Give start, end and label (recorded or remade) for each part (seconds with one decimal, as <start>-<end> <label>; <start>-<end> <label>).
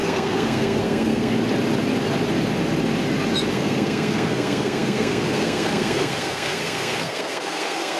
0.0-1.3 remade; 1.3-3.5 recorded; 3.5-8.0 remade